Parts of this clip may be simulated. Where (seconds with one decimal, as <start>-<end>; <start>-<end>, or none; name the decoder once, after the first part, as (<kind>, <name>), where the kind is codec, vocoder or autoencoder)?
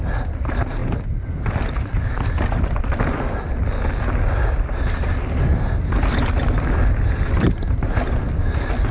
none